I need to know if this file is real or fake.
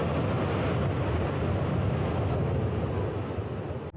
real